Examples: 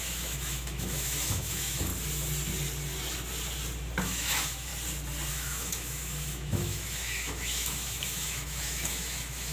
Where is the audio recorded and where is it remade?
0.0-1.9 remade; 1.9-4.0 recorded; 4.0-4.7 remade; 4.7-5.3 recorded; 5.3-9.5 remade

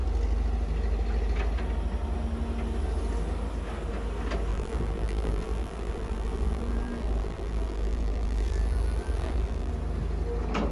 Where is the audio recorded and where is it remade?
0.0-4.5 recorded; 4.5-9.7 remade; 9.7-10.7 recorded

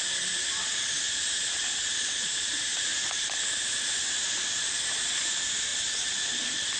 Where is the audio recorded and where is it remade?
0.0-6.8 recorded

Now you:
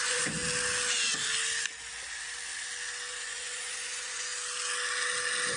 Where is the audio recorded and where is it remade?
0.0-0.4 remade; 0.4-3.1 recorded; 3.1-4.3 remade; 4.3-5.6 recorded

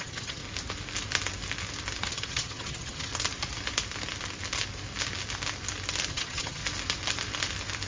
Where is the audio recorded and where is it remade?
0.0-0.4 remade; 0.4-2.1 recorded; 2.1-3.1 remade; 3.1-6.1 recorded; 6.1-6.6 remade; 6.6-7.9 recorded